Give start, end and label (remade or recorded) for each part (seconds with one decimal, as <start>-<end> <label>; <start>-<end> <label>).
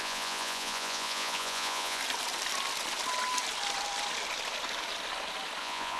0.0-2.0 remade; 2.0-5.6 recorded; 5.6-6.0 remade